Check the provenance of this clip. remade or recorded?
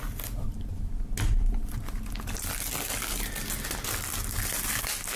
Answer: recorded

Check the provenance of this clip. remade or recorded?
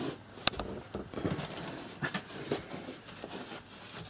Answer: recorded